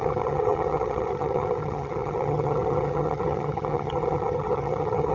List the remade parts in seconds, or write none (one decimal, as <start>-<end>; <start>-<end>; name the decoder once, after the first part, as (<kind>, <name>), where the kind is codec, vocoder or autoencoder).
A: 0.0-5.1 (vocoder, HiFi-GAN)